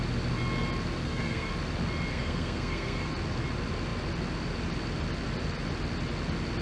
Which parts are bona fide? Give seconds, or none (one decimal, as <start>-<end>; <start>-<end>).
0.0-1.0; 1.5-2.1; 3.1-6.6